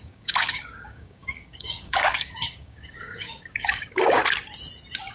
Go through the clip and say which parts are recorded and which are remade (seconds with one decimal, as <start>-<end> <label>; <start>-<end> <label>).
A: 0.0-4.2 remade; 4.2-5.1 recorded